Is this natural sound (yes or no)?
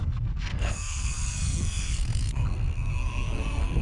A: no